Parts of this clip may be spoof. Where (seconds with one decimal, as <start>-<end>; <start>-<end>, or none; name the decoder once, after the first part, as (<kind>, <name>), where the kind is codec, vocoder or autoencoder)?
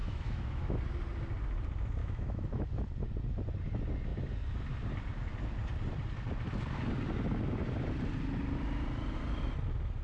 0.0-0.8 (autoencoder, DAC-VAE); 2.0-2.7